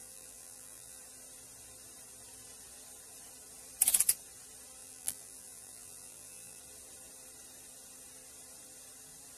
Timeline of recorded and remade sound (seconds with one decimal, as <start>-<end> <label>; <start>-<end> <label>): 0.0-1.0 remade; 1.0-4.8 recorded; 4.8-6.6 remade; 6.6-9.4 recorded